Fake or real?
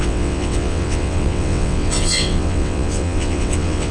fake